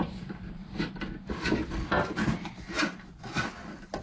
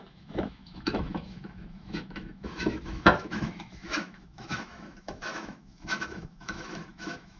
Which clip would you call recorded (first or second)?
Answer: first